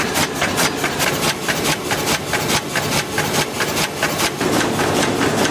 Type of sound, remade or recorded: recorded